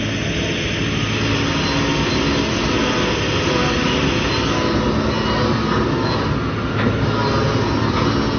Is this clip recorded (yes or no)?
yes